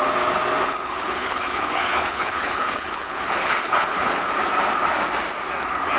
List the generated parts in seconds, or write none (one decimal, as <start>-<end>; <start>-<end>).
0.7-4.3